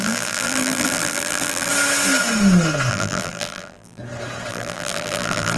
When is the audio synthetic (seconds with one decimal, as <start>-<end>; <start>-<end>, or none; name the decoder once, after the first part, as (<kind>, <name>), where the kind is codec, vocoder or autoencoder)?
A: 0.0-1.7 (vocoder, BigVGAN v2); 2.9-4.0; 4.5-5.6